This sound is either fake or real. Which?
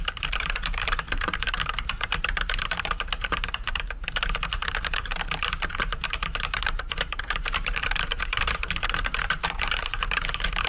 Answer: fake